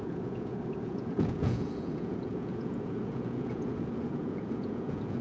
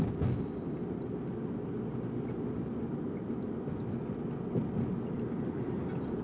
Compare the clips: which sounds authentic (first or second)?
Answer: second